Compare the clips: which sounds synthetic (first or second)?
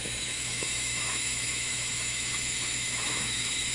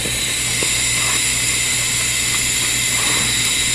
first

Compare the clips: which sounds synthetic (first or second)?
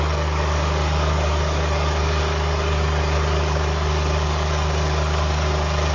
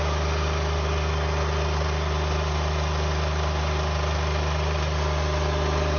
first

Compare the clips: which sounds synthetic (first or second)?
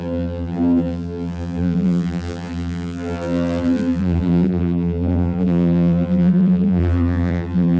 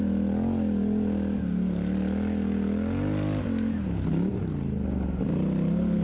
first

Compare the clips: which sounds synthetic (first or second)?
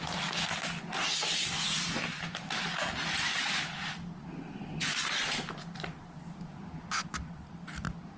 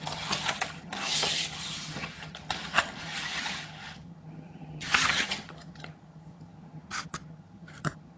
second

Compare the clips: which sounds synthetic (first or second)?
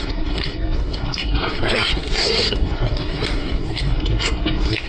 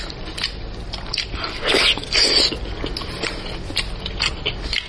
first